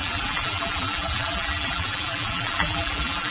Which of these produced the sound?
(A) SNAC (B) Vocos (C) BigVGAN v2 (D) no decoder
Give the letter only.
C